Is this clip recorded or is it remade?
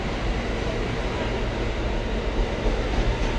recorded